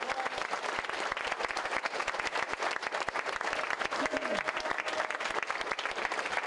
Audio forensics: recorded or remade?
recorded